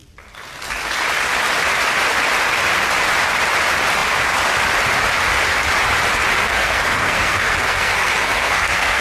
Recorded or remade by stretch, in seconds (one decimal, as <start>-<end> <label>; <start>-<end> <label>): 0.0-6.4 recorded; 6.4-9.0 remade